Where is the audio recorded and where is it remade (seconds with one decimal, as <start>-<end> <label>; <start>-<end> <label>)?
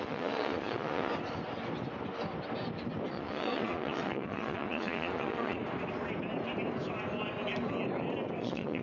0.0-1.1 remade; 1.1-3.1 recorded; 3.1-5.6 remade; 5.6-8.4 recorded; 8.4-8.8 remade